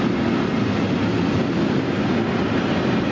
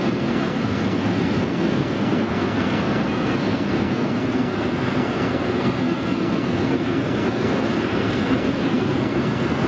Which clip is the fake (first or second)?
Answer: second